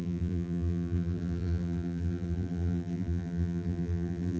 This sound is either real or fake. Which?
fake